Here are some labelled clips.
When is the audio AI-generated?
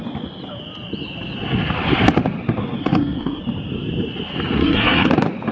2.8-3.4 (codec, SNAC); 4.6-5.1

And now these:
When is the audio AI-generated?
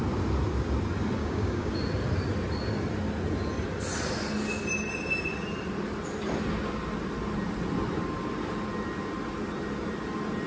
1.2-1.7 (codec, DAC)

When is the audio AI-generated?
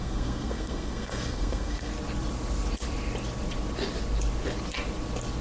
0.0-1.9 (codec, SNAC)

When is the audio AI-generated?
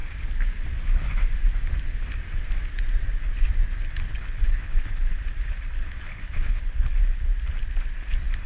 4.1-7.0 (codec, HILCodec)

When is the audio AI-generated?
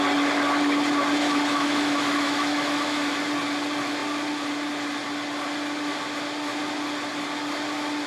1.2-3.2 (autoencoder, DAC-VAE)